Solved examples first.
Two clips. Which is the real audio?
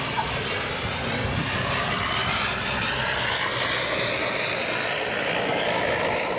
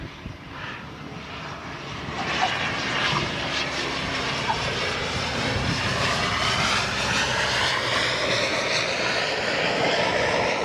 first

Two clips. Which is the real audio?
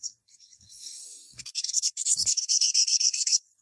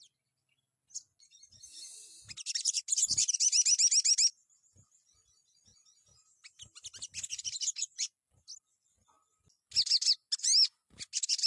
second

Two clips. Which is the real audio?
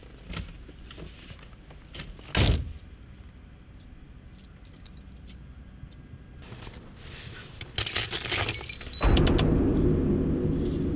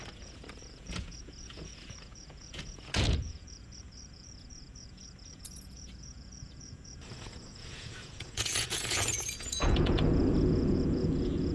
first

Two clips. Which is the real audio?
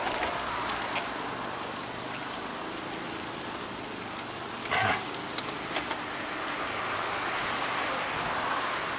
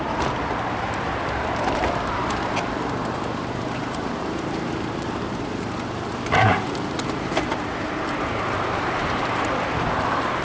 first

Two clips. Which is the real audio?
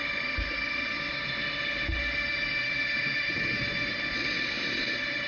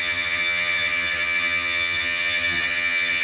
first